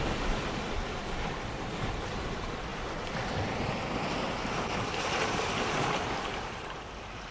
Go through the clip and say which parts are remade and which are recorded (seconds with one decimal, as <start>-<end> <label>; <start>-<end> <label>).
0.0-7.3 recorded